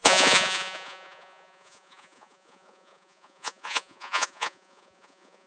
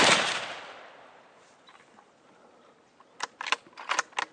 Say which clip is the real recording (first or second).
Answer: second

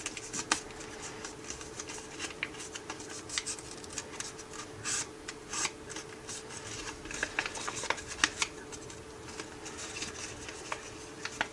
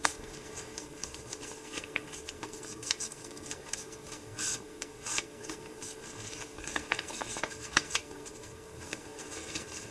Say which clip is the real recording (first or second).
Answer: first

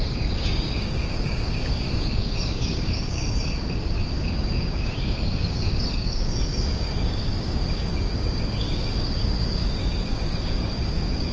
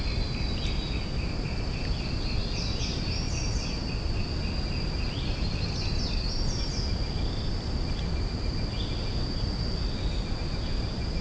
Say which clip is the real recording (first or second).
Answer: second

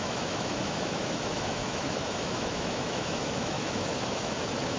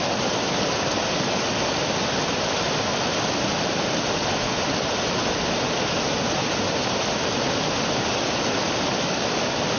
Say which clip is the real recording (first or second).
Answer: second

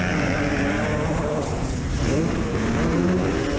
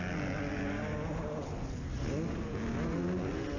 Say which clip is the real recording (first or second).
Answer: second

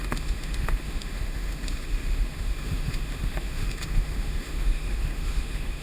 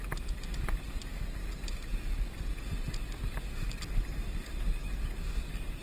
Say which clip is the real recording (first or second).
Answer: second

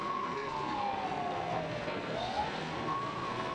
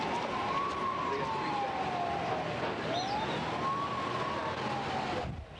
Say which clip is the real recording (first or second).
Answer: second